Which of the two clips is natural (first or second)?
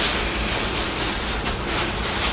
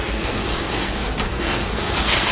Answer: first